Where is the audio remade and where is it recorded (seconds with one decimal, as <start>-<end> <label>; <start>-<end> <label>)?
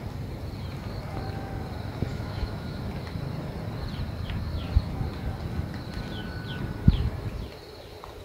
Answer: 0.0-2.1 recorded; 2.1-2.8 remade; 2.8-8.2 recorded